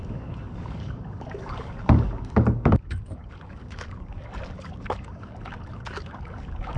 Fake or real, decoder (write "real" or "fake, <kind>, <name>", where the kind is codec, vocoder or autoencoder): fake, codec, DAC